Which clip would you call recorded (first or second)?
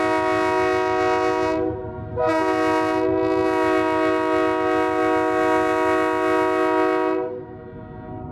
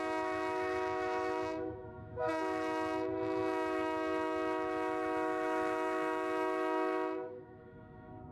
first